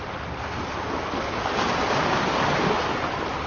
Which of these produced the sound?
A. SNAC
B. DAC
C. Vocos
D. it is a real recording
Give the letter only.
D